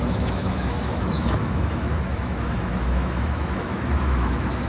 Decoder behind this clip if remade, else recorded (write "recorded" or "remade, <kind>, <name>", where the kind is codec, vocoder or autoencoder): remade, autoencoder, DAC-VAE